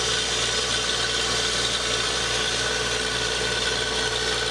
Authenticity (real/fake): real